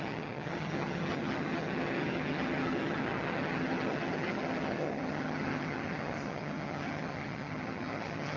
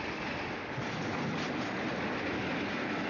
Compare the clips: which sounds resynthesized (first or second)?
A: first